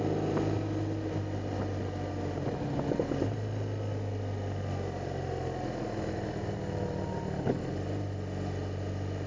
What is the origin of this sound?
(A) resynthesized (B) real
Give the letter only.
B